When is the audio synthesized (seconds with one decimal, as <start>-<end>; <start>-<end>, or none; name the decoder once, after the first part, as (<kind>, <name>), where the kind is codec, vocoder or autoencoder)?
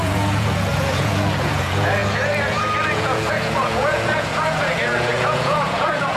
0.0-6.2 (vocoder, Vocos)